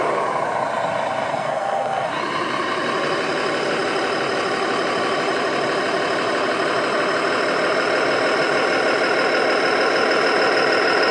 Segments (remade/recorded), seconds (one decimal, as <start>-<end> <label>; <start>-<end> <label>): 0.0-1.3 recorded; 1.3-2.1 remade; 2.1-11.1 recorded

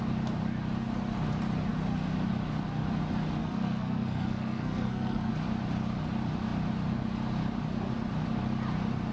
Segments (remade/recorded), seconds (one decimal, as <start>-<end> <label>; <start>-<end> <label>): 0.0-3.4 recorded; 3.4-5.3 remade; 5.3-9.1 recorded

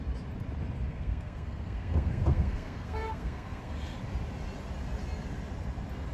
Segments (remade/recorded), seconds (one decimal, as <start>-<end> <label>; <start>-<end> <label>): 0.0-0.9 recorded; 0.9-3.7 remade; 3.7-6.1 recorded

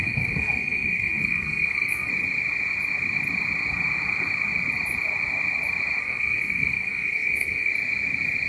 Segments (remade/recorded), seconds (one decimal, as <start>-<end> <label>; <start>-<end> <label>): 0.0-2.1 remade; 2.1-6.0 recorded; 6.0-7.7 remade; 7.7-8.5 recorded

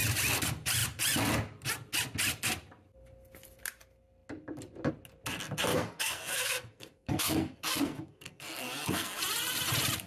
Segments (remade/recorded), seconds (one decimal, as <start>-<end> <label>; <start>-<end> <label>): 0.0-5.7 recorded; 5.7-9.2 remade; 9.2-10.1 recorded